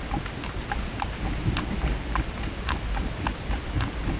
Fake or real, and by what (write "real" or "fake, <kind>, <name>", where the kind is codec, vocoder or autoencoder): real